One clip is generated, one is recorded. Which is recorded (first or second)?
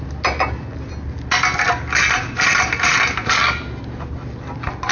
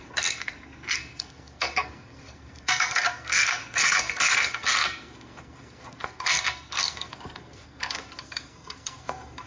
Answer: first